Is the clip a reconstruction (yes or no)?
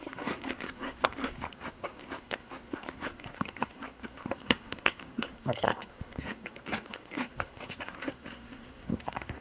yes